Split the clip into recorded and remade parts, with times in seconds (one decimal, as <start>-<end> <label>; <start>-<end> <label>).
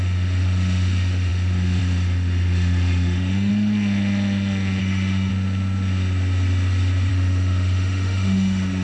0.0-3.5 remade; 3.5-4.8 recorded; 4.8-5.3 remade; 5.3-7.1 recorded; 7.1-8.8 remade